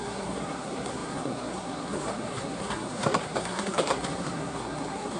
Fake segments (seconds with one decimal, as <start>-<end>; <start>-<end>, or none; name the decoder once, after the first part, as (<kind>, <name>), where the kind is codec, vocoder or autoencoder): 0.0-5.2 (codec, SNAC)

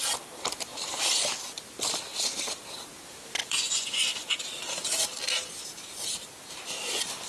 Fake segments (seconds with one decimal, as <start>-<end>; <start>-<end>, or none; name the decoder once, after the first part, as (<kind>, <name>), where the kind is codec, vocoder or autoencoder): 3.4-4.3 (vocoder, Vocos)

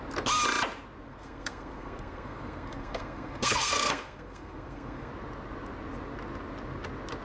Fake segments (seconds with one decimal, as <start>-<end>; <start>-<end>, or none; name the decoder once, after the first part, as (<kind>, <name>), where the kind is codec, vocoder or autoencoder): 1.1-5.1 (codec, SNAC)

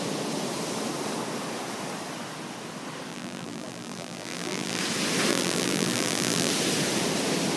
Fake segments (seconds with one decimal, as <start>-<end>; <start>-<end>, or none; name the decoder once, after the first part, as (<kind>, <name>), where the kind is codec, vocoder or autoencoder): 3.1-4.8 (vocoder, BigVGAN v2); 5.3-6.5

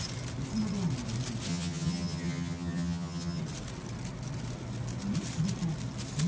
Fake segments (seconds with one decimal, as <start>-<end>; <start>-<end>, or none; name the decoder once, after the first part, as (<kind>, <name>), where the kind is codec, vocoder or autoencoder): 1.5-3.4 (vocoder, HiFi-GAN)

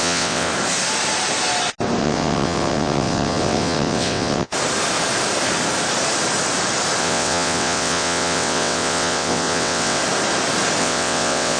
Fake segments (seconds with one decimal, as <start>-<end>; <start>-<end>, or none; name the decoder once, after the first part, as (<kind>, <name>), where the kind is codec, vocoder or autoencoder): 0.0-0.5 (vocoder, WaveNeXt); 2.0-4.5; 7.0-10.0; 10.8-11.6

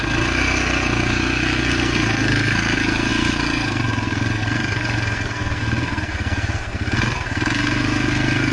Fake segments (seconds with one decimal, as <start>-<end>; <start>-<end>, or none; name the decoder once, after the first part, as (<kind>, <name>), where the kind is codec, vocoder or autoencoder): 0.0-8.5 (codec, SNAC)